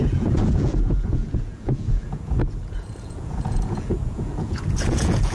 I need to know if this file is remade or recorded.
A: remade